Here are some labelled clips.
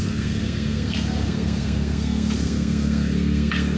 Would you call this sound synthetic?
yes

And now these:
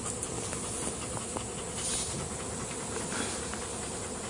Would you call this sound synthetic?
no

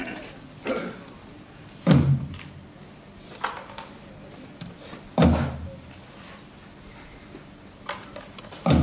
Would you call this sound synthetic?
no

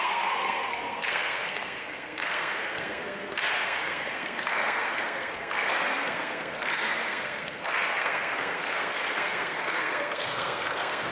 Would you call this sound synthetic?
yes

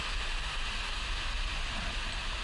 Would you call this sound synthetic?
no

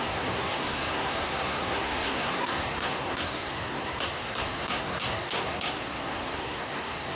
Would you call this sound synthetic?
yes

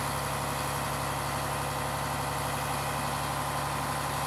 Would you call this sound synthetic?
no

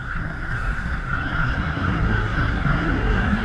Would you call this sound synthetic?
yes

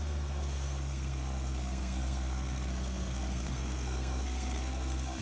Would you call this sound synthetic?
yes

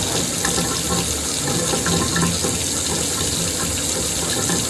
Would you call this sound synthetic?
no